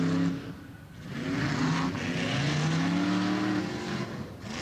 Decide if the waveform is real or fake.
real